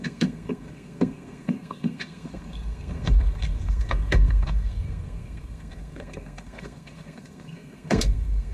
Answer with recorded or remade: remade